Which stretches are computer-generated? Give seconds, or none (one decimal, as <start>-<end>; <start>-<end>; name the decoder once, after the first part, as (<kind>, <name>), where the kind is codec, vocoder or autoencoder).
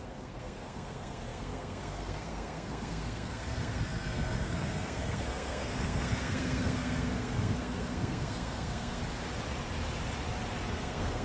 0.0-9.0 (codec, SNAC); 10.7-11.2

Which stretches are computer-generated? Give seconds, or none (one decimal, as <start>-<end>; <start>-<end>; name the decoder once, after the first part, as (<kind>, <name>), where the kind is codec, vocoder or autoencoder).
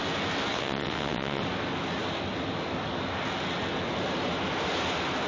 0.5-1.4 (vocoder, WaveNeXt)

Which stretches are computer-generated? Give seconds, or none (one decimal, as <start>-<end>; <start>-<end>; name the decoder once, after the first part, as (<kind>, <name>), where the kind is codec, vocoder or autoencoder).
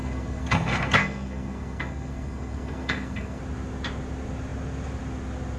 0.0-3.4 (codec, SNAC)